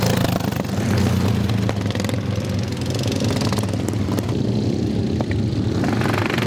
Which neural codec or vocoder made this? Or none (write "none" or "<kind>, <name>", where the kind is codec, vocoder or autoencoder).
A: none